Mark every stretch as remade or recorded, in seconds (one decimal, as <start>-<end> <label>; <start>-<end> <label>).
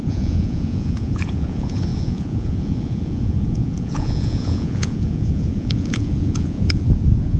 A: 0.0-7.4 remade